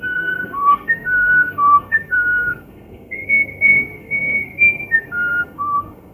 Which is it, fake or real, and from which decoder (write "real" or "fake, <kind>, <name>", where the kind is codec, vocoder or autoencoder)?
fake, codec, SNAC